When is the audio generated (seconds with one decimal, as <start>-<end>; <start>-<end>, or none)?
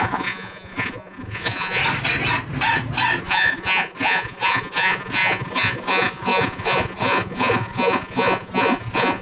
0.0-1.8; 3.2-9.2